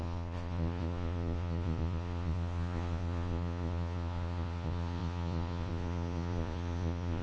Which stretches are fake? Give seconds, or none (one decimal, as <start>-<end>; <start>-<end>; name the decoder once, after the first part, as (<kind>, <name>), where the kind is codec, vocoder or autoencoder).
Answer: 0.0-7.2 (vocoder, Vocos)